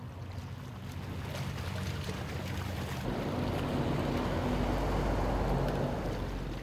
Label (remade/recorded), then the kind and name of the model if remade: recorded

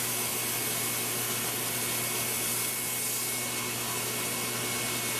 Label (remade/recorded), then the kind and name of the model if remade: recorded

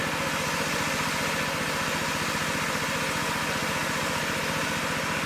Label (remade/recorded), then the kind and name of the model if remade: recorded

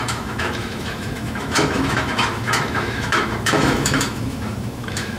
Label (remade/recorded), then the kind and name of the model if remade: remade, autoencoder, DAC-VAE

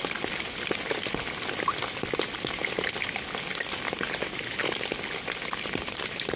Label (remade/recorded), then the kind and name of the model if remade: recorded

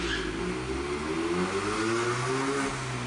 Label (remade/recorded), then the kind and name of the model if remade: recorded